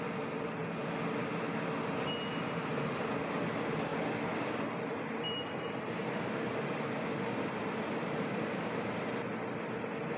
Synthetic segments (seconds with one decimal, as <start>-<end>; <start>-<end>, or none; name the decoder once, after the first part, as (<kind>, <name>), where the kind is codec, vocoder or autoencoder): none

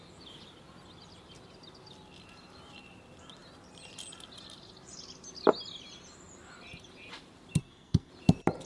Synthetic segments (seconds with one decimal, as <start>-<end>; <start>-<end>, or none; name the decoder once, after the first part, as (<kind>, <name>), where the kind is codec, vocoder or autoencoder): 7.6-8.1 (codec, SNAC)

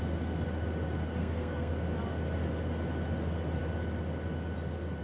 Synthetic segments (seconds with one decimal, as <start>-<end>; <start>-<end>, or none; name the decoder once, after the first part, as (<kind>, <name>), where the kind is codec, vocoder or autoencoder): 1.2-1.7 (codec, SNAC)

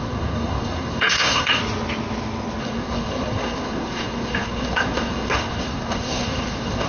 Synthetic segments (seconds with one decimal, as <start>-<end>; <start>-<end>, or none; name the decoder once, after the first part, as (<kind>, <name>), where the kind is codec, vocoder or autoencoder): 0.0-1.6 (codec, SNAC); 2.6-6.9

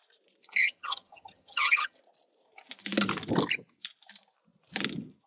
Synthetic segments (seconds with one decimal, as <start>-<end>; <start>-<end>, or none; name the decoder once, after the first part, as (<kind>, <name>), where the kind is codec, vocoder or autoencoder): 0.6-2.0 (vocoder, HiFi-GAN)

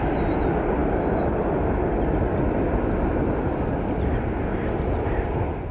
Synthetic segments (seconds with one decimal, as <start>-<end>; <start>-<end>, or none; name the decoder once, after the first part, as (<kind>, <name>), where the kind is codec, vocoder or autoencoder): none